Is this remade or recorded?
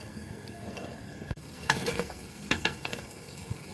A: remade